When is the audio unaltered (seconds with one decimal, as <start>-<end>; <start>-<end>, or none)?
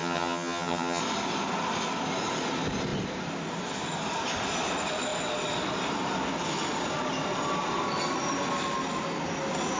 1.0-9.8